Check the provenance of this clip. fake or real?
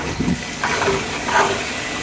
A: fake